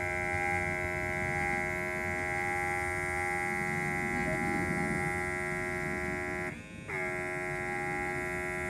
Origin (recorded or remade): recorded